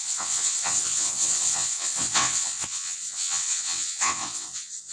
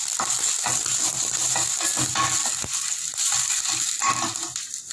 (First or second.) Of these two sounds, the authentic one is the second